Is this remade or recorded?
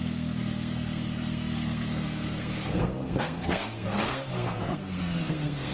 remade